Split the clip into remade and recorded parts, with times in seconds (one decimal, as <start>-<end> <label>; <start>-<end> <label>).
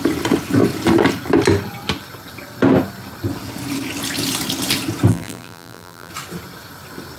0.0-5.1 recorded; 5.1-6.1 remade; 6.1-7.2 recorded